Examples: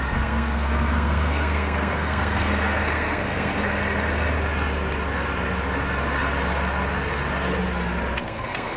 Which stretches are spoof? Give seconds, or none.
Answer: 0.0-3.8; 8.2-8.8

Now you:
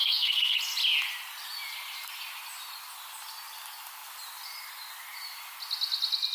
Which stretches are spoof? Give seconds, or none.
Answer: 0.0-0.6

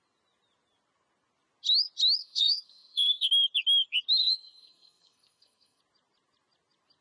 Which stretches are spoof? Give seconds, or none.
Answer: 2.2-3.3; 4.2-5.8

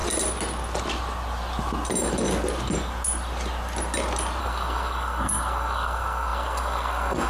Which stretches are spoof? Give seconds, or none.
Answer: 4.4-7.3